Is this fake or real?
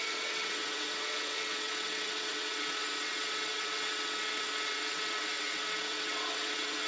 fake